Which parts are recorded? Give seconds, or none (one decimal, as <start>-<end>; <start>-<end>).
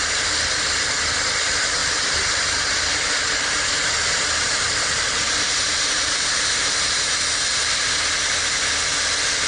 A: 0.0-1.8; 6.3-9.5